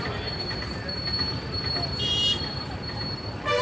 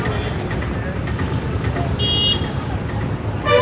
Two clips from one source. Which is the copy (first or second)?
first